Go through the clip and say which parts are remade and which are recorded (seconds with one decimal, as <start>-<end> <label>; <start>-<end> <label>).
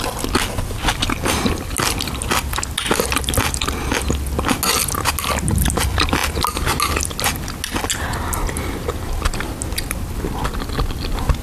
0.0-11.4 recorded